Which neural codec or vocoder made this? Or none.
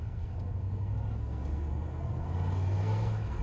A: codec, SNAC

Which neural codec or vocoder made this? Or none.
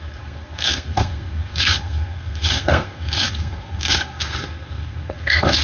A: codec, SNAC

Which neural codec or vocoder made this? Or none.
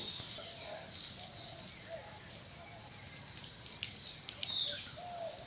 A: none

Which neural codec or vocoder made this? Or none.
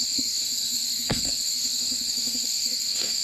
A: codec, SNAC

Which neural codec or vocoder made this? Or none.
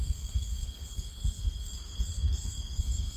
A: codec, SNAC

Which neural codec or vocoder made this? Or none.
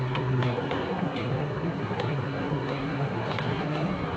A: codec, SNAC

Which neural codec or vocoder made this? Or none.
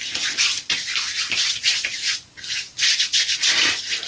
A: none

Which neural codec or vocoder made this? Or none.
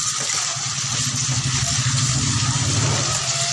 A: none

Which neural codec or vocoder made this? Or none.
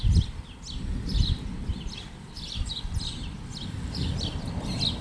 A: none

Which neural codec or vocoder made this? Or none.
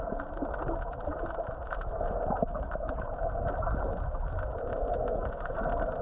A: none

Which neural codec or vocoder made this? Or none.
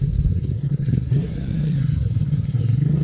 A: codec, SNAC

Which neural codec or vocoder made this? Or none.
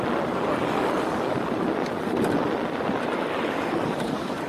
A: none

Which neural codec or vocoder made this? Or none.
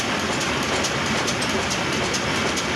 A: none